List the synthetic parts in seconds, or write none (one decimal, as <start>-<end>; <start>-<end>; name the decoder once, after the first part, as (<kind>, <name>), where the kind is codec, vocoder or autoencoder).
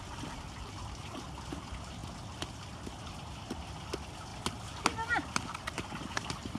none